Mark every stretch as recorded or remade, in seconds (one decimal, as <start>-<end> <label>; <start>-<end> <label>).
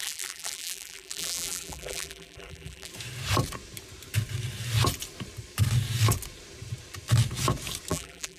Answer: 0.0-2.9 remade; 2.9-7.9 recorded; 7.9-8.4 remade